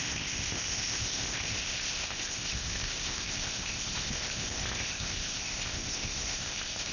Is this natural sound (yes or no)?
no